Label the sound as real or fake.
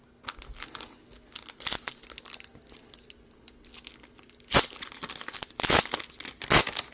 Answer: real